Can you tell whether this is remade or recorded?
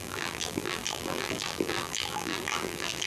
remade